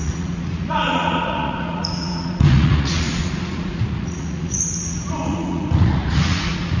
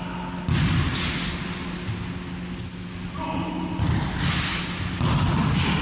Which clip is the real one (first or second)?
second